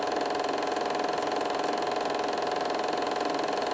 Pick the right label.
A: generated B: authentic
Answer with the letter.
B